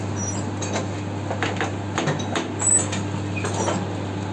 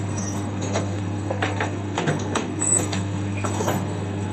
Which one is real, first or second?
first